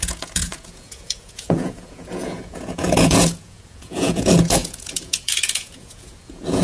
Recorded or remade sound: remade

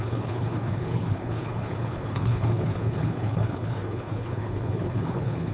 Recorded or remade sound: remade